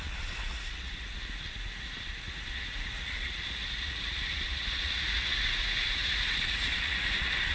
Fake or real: fake